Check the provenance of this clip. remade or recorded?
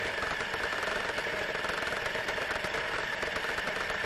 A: recorded